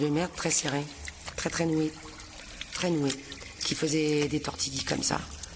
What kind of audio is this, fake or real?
real